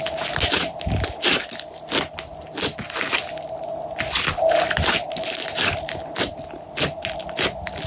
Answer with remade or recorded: recorded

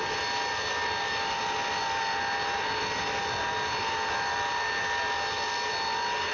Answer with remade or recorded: recorded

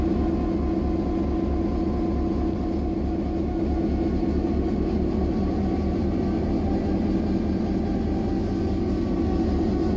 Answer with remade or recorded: recorded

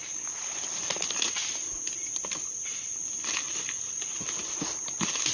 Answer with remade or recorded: recorded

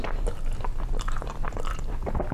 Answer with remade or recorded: recorded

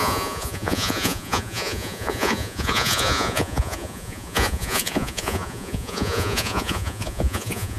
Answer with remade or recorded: remade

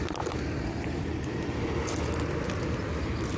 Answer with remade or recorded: recorded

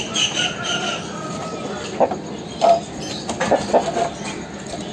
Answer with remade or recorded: recorded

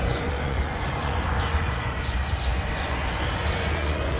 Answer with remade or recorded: remade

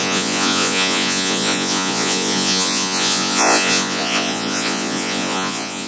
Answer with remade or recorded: remade